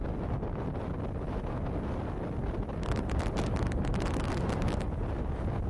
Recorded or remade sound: recorded